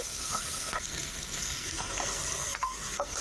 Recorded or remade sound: remade